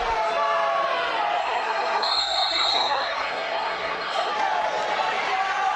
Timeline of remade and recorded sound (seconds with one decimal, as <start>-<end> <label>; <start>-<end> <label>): 0.0-1.4 recorded; 1.4-4.3 remade; 4.3-5.8 recorded